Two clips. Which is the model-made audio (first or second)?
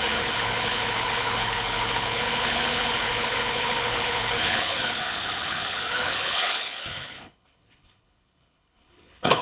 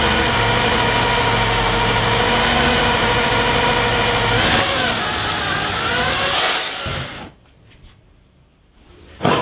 first